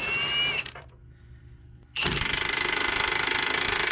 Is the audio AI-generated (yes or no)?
no